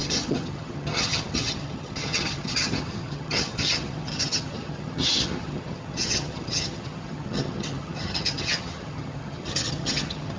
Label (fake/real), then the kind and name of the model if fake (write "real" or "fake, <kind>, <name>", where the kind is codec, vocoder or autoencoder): fake, vocoder, HiFi-GAN